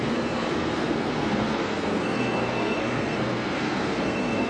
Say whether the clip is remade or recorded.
remade